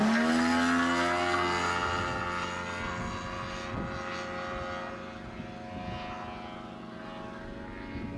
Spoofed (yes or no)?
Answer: no